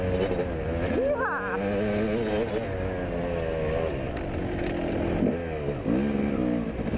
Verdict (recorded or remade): recorded